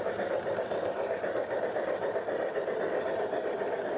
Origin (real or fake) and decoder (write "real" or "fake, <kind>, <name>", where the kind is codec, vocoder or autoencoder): real